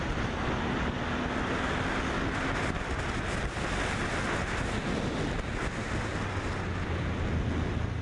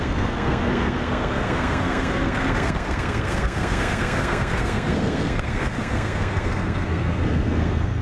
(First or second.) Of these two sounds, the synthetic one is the second